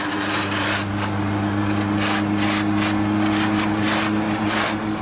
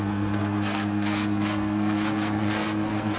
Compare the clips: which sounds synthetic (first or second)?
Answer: second